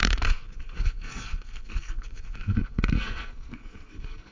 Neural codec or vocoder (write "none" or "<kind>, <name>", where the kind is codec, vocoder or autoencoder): codec, SNAC